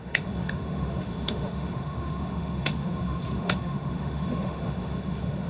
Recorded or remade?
remade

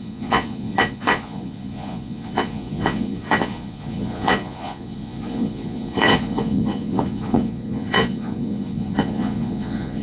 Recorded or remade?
remade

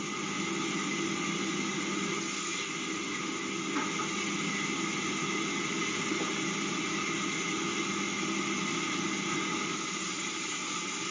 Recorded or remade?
recorded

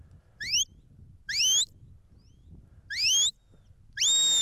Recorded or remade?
recorded